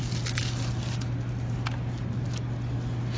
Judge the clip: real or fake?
real